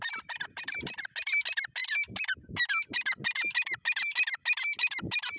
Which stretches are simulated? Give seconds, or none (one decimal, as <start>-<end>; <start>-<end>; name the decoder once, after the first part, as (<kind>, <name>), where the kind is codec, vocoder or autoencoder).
none